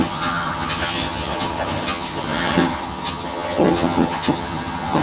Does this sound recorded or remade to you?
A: remade